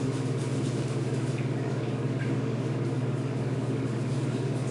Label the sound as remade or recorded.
remade